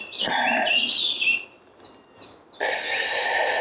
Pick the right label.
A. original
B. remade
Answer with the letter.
A